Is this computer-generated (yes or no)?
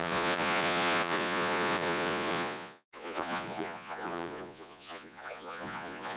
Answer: yes